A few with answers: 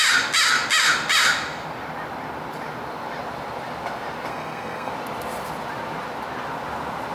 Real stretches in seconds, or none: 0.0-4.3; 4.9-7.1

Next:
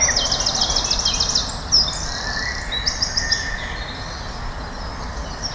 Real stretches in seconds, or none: 0.0-5.5

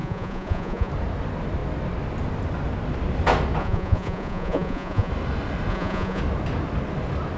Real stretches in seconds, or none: 0.9-3.6; 5.1-5.7; 6.2-7.4

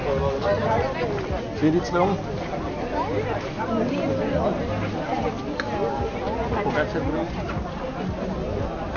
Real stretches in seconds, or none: 0.0-9.0